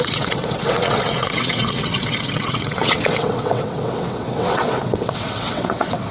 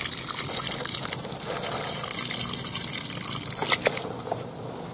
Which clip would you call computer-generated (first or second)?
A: first